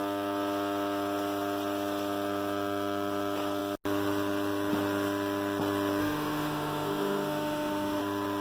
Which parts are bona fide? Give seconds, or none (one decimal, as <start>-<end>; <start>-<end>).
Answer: 0.0-6.0; 8.0-8.4